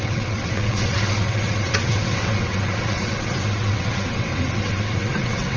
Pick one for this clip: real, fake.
fake